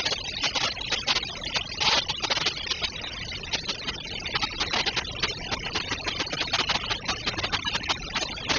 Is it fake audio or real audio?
real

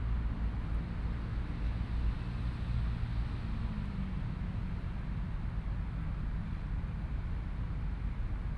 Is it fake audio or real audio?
real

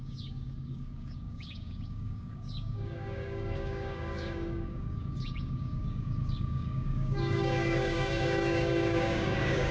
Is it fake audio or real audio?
fake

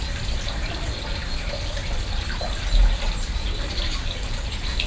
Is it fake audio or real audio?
real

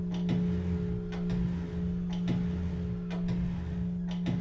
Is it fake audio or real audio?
real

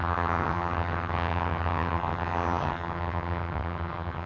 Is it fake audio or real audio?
fake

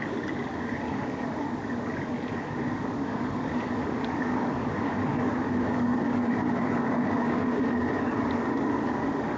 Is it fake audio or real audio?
fake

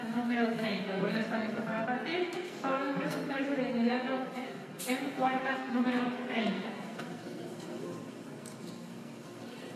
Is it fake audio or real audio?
fake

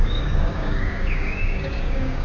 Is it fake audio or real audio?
fake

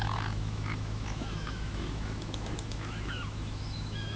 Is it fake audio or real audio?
fake